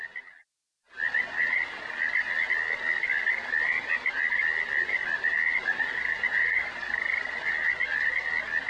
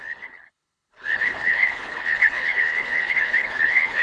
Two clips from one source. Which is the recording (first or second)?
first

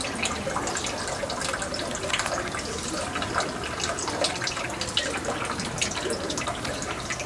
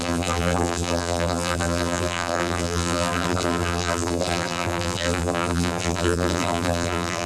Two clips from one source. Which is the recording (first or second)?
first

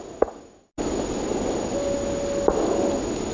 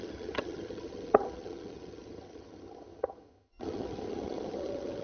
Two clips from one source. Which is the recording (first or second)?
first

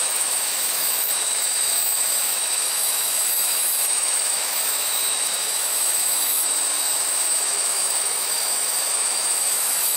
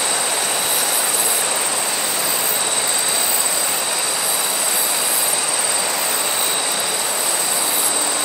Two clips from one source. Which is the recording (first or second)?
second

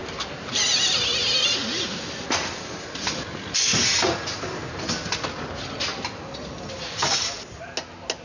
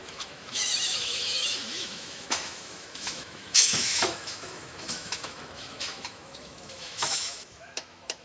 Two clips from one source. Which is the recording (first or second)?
first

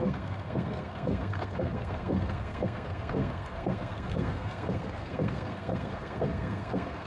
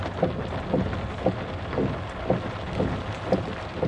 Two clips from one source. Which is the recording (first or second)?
second